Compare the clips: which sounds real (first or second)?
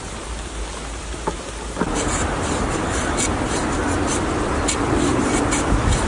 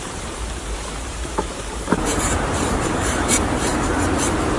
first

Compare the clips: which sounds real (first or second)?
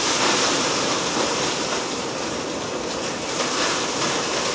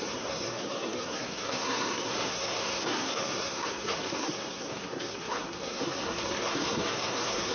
first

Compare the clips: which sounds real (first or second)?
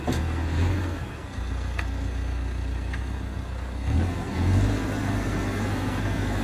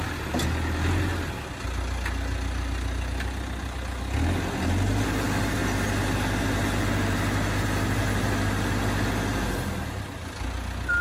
second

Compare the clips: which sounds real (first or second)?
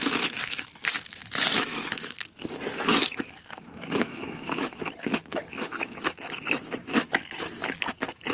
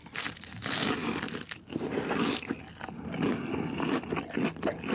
second